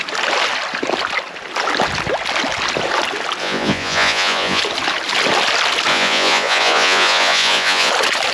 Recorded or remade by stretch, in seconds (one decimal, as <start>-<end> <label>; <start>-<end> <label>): 0.0-3.4 recorded; 3.4-4.6 remade; 4.6-5.9 recorded; 5.9-7.9 remade; 7.9-8.3 recorded